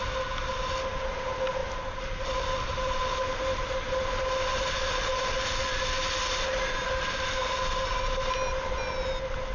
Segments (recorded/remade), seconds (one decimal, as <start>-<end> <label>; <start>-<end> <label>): 0.0-9.5 recorded